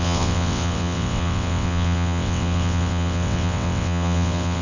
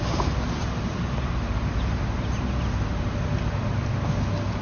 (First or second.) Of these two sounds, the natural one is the second